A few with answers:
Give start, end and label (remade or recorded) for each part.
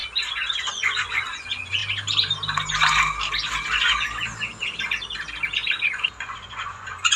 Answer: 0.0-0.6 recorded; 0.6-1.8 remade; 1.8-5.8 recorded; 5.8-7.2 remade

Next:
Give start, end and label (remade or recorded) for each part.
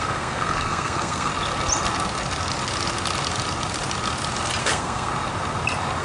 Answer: 0.0-1.3 remade; 1.3-4.6 recorded; 4.6-5.1 remade; 5.1-6.0 recorded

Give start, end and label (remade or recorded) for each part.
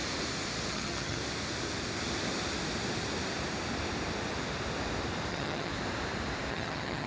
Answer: 0.0-0.7 recorded; 0.7-1.2 remade; 1.2-5.3 recorded; 5.3-5.7 remade; 5.7-6.5 recorded; 6.5-7.1 remade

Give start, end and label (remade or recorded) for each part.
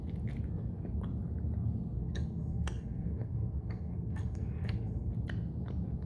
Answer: 0.0-2.0 recorded; 2.0-5.1 remade; 5.1-6.1 recorded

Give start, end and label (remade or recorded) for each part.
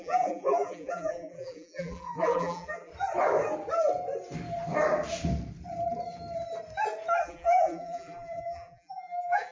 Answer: 0.0-2.9 remade; 2.9-7.2 recorded; 7.2-9.5 remade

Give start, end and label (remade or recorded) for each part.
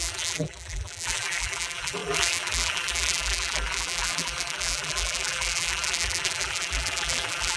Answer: 0.0-7.6 remade